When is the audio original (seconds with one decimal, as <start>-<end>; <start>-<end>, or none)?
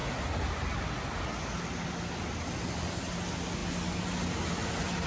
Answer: 0.0-5.1